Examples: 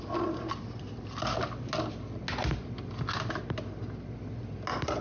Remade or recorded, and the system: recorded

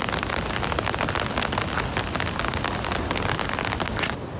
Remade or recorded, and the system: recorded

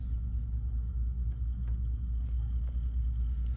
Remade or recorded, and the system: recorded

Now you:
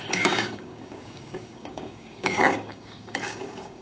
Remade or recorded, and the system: remade, codec, DAC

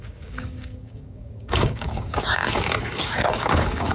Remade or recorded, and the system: remade, codec, DAC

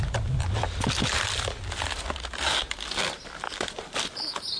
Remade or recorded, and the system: recorded